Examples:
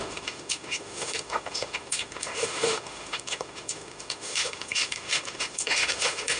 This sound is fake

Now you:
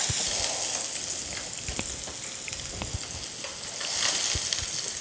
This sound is real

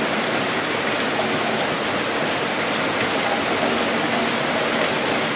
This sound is real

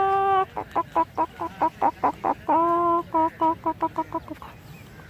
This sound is real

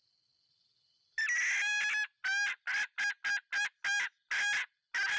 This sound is real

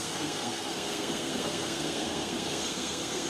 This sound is fake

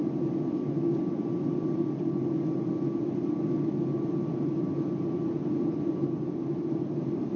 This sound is real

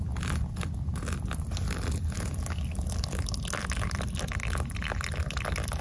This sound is real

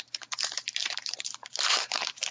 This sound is fake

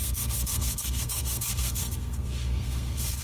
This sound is fake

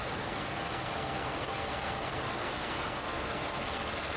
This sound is fake